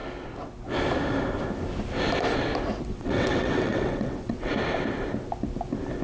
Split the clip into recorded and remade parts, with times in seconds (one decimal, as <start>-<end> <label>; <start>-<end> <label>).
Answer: 0.0-2.9 recorded; 2.9-4.5 remade; 4.5-6.0 recorded